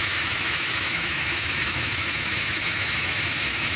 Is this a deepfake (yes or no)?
yes